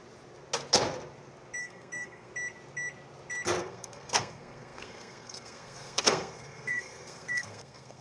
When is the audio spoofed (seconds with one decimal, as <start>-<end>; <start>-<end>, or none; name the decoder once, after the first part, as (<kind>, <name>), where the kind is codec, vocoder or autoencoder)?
1.6-2.3 (codec, SNAC); 3.6-8.0